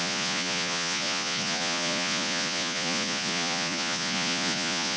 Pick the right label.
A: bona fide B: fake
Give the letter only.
B